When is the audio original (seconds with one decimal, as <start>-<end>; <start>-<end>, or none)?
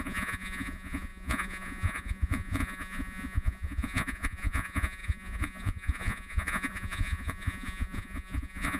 none